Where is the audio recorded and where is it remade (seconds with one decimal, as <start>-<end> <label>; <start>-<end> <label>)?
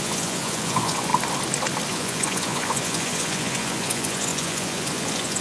0.0-1.1 remade; 1.1-1.9 recorded; 1.9-5.4 remade